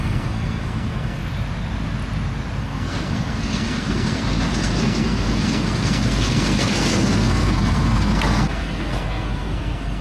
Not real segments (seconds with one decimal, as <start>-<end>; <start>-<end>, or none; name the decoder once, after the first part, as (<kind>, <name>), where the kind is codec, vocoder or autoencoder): 0.0-1.2 (codec, SNAC); 2.6-10.0